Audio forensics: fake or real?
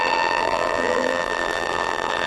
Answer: fake